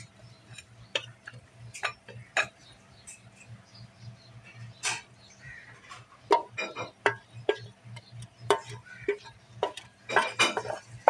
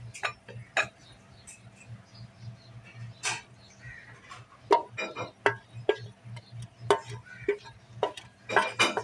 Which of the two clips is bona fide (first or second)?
second